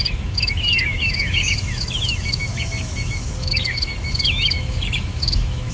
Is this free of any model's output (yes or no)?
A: no